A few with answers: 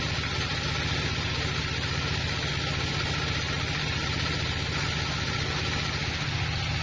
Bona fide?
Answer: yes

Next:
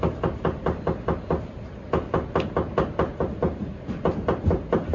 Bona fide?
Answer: yes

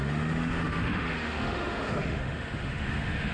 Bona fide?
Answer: no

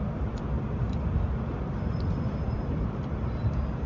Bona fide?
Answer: no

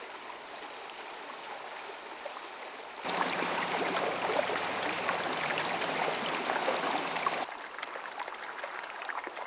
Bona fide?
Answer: yes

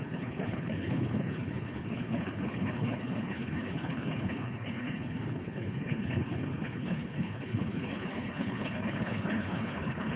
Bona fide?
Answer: no